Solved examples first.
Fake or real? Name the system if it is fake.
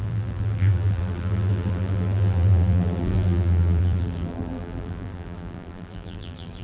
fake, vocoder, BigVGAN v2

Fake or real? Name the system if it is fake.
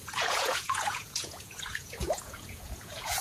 fake, vocoder, Vocos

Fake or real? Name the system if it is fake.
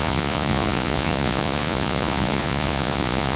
fake, vocoder, Vocos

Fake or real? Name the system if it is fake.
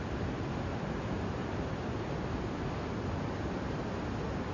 real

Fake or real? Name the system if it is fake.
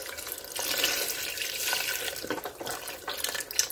real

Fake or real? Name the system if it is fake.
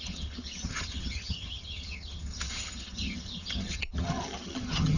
fake, vocoder, HiFi-GAN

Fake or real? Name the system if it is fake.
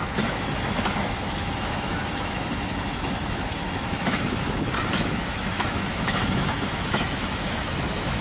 fake, autoencoder, DAC-VAE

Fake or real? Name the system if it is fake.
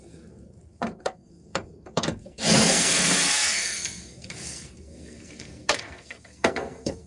fake, codec, SNAC